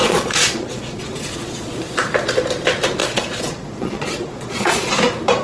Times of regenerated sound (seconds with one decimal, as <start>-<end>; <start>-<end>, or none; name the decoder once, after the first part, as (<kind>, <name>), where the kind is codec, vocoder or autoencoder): 0.0-1.8 (vocoder, Vocos); 3.0-4.9